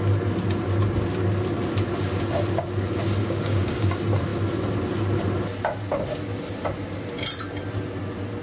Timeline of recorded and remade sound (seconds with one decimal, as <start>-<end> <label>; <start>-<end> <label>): 0.0-3.2 recorded; 3.2-3.9 remade; 3.9-8.4 recorded